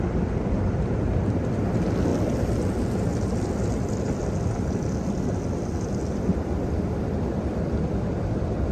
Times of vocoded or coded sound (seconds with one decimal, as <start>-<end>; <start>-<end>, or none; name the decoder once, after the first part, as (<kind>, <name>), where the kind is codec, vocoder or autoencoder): 0.0-2.1 (vocoder, BigVGAN v2); 6.1-8.7